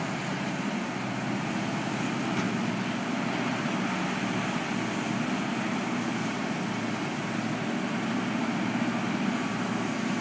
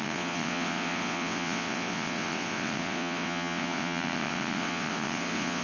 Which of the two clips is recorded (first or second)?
first